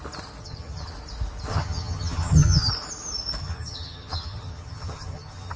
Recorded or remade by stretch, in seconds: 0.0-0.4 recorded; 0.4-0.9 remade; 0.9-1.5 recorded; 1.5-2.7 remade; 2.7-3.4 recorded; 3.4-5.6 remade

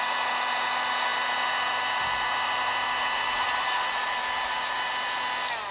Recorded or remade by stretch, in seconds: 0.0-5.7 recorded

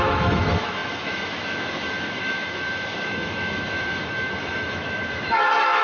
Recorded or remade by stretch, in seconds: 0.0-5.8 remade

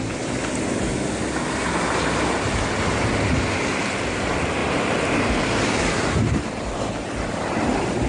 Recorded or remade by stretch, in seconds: 0.0-8.1 recorded